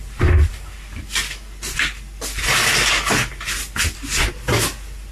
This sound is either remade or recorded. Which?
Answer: recorded